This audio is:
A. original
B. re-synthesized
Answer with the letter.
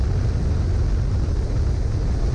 A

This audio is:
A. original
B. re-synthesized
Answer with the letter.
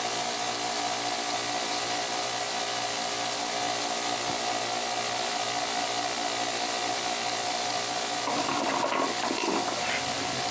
A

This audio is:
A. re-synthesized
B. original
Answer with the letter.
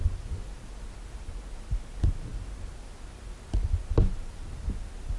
B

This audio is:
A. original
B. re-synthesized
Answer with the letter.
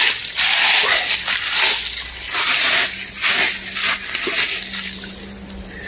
A